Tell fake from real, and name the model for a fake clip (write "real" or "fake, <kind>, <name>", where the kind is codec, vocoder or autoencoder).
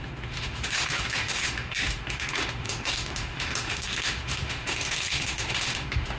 fake, autoencoder, DAC-VAE